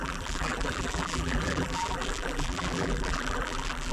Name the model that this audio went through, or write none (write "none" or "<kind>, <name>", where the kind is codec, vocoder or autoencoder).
vocoder, BigVGAN v2